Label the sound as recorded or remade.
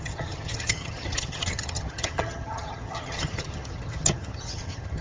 remade